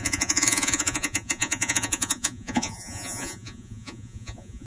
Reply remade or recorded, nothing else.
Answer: remade